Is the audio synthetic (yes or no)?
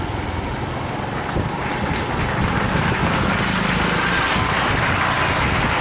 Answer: no